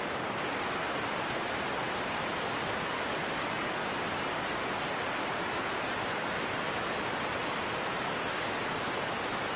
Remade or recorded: recorded